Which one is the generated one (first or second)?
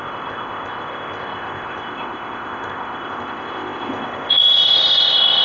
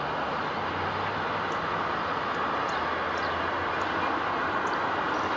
first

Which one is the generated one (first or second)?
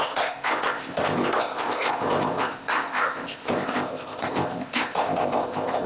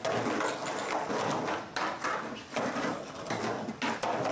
first